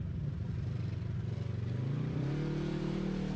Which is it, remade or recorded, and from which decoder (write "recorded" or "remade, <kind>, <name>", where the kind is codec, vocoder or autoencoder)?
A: recorded